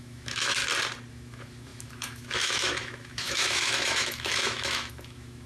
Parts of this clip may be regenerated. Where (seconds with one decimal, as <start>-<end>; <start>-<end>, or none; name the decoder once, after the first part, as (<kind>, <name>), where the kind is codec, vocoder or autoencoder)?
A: 0.0-0.6 (autoencoder, DAC-VAE); 1.1-5.5

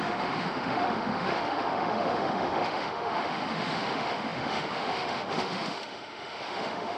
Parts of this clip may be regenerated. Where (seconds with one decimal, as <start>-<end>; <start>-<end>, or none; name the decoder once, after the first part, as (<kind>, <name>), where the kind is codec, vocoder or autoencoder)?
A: 0.0-7.0 (autoencoder, DAC-VAE)

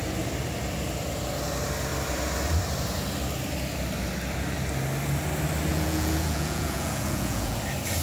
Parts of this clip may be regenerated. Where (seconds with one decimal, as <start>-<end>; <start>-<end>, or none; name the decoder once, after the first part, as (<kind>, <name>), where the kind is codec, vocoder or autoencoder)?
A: 5.7-7.6 (vocoder, Vocos)

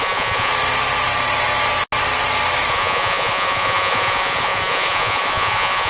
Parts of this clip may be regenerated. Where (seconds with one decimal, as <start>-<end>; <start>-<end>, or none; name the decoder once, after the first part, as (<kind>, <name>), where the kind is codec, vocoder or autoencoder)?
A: 0.0-0.5 (vocoder, Vocos); 2.7-5.9

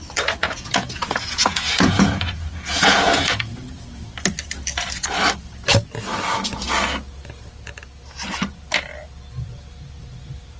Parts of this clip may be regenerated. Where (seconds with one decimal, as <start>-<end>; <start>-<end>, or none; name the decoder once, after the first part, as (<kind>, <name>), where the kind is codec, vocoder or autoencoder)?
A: 0.4-3.8 (vocoder, Vocos)

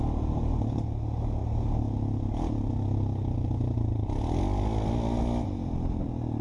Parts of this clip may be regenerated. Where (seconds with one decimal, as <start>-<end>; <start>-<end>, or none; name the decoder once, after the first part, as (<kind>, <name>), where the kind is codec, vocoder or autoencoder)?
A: none

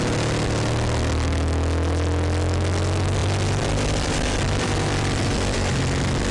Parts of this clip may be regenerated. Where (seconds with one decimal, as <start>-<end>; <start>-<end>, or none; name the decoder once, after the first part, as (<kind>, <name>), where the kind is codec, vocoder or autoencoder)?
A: 3.2-5.8 (vocoder, BigVGAN v2)